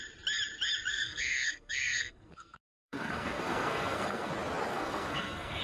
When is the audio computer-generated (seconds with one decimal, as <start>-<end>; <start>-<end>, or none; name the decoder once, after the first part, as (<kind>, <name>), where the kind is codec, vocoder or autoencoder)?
0.9-4.3 (codec, SNAC); 4.7-5.6